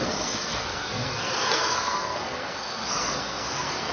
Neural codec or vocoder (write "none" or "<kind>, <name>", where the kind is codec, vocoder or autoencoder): codec, SNAC